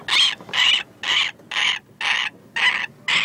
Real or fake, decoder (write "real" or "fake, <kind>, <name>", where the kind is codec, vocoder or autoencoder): real